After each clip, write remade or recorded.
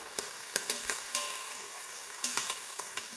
remade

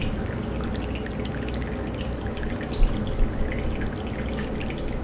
recorded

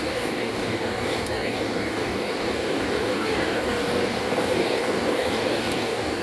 remade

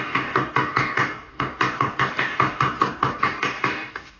remade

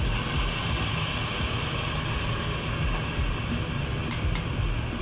recorded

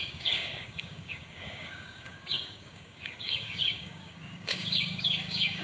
remade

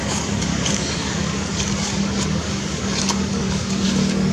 remade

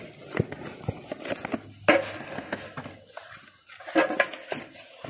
recorded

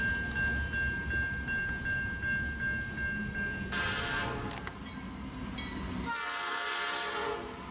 recorded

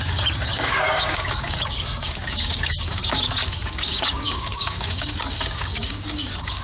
remade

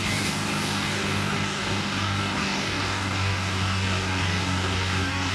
remade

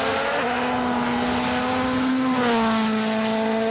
recorded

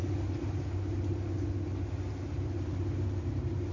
recorded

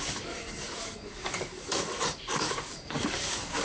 remade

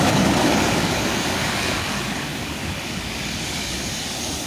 remade